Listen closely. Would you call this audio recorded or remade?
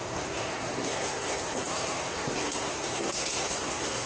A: remade